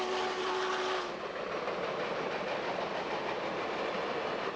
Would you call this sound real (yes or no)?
yes